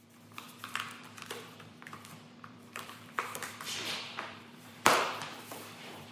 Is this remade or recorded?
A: remade